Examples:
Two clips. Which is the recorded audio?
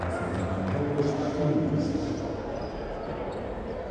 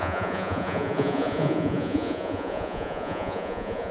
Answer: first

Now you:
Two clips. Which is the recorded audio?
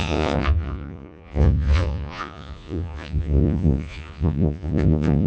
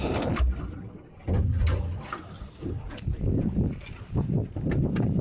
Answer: second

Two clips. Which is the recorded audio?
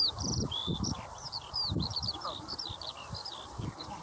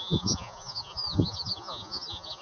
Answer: first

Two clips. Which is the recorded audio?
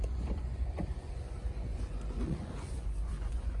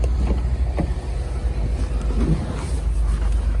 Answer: second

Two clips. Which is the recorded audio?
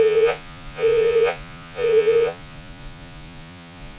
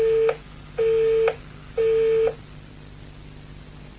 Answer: second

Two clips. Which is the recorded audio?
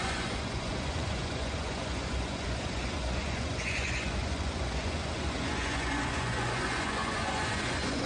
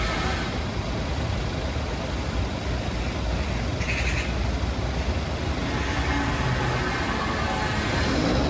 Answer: second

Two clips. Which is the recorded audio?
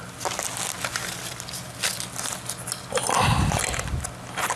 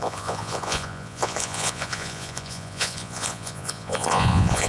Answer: first